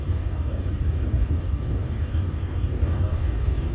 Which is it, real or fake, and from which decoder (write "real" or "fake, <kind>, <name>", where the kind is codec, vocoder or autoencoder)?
fake, codec, DAC